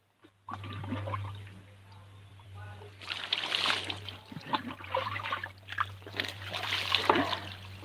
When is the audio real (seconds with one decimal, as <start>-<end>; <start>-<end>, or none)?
0.0-2.3; 6.9-7.8